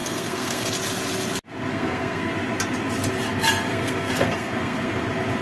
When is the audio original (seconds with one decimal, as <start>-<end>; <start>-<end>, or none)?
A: 0.7-1.7; 2.3-3.7; 5.0-5.4

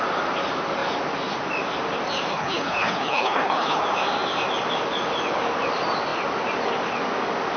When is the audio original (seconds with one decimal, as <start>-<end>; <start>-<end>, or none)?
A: 0.0-2.3; 3.8-7.6

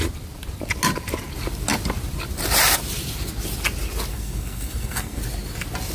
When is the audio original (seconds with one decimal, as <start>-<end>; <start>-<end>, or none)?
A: 0.0-4.1; 5.2-5.9